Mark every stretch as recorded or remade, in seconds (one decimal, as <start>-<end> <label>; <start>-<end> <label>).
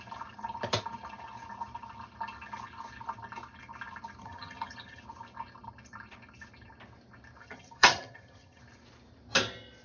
0.0-4.2 recorded; 4.2-5.0 remade; 5.0-7.4 recorded; 7.4-8.6 remade; 8.6-9.8 recorded